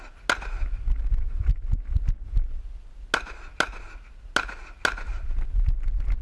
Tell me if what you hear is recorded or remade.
recorded